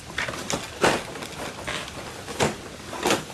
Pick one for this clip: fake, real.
real